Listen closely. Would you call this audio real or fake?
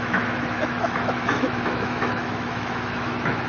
fake